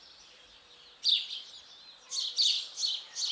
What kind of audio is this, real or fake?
real